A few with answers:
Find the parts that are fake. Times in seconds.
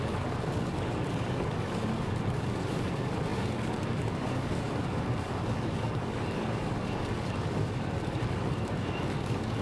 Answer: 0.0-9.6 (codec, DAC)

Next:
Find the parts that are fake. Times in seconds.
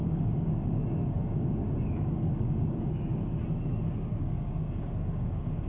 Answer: 0.0-3.4 (codec, DAC); 4.1-5.7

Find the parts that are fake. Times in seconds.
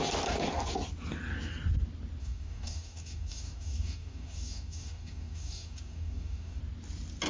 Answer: 2.2-6.6 (codec, DAC)